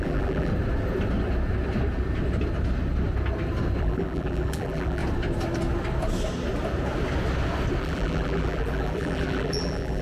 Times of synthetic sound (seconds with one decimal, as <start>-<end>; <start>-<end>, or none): 0.0-0.5; 3.8-5.0; 7.8-10.0